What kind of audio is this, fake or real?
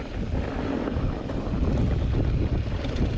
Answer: real